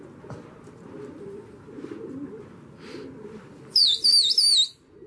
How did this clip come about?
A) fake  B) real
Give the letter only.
B